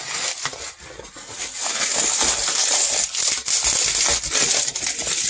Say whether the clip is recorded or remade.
recorded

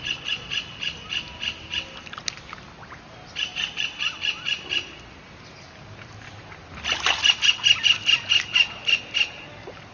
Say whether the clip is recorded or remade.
recorded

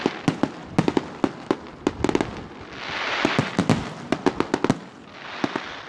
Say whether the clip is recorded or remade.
recorded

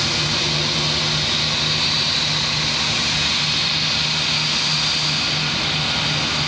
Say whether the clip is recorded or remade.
recorded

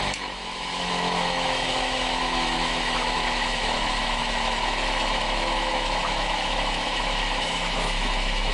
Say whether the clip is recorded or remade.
remade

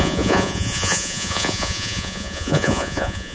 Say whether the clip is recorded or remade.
remade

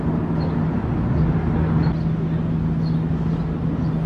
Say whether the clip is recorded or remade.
recorded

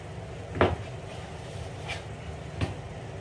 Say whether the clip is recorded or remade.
recorded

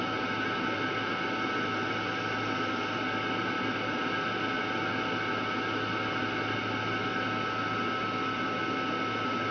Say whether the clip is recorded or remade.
recorded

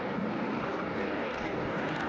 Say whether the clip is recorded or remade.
remade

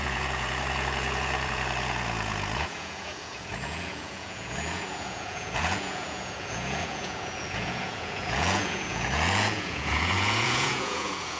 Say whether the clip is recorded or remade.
remade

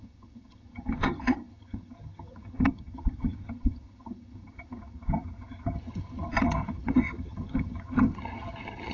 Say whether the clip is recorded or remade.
remade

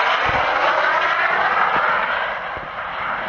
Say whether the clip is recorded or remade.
recorded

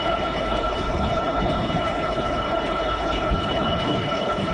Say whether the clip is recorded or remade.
remade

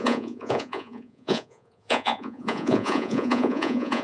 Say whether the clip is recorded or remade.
remade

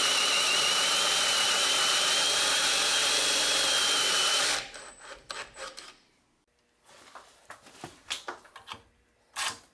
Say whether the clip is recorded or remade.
recorded